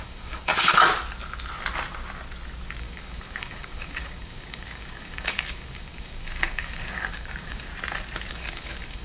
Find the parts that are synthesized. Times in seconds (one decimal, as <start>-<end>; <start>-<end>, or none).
0.0-0.5; 2.8-7.7; 8.3-9.0